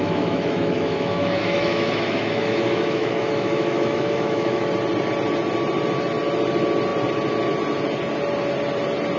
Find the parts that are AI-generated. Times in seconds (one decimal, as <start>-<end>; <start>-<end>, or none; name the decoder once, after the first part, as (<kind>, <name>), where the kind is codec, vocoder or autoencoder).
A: 0.0-4.7 (autoencoder, DAC-VAE)